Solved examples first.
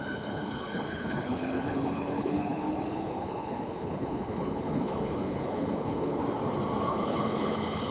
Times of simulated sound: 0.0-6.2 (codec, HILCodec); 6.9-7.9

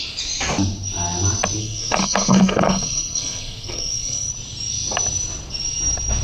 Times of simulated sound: 1.6-4.3 (codec, SNAC)

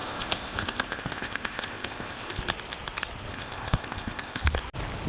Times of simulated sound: 0.0-2.4 (codec, ZipCodec); 3.3-4.4